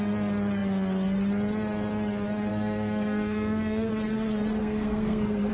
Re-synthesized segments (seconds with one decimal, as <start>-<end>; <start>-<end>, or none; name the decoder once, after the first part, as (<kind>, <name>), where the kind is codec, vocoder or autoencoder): 2.5-3.9 (codec, SNAC); 4.6-5.5